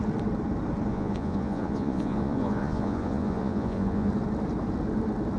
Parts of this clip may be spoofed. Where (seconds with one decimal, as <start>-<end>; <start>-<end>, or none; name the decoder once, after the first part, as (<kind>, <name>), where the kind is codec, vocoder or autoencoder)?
0.9-4.1 (vocoder, Vocos)